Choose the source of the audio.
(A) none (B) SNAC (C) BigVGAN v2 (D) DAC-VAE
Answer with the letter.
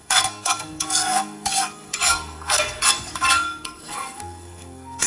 B